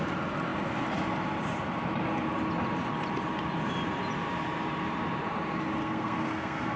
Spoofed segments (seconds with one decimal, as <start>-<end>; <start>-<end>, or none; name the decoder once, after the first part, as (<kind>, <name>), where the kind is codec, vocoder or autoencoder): 5.8-6.8 (codec, SNAC)